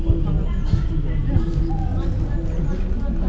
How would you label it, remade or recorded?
recorded